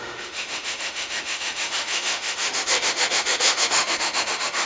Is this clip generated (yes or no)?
yes